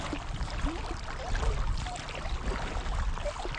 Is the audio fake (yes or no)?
no